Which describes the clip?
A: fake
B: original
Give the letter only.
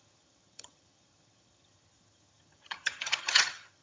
A